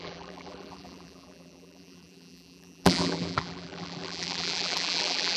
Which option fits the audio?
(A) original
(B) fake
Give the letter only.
B